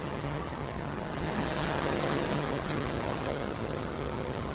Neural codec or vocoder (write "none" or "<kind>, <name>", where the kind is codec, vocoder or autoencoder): vocoder, HiFi-GAN